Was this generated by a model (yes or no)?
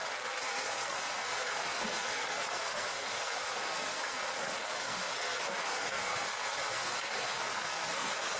yes